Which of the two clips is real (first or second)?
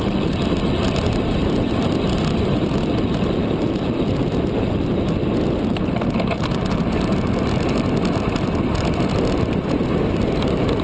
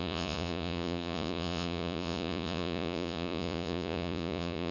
first